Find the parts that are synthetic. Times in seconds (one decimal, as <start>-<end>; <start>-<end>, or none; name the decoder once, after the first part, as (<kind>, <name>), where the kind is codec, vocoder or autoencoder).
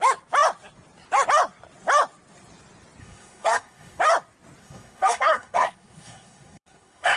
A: 3.0-4.0 (codec, SNAC); 4.6-7.2